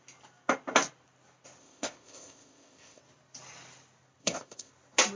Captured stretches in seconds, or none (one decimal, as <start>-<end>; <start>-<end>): 0.0-1.6; 3.0-4.2; 4.7-5.2